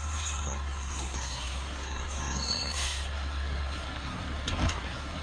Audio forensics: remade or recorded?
remade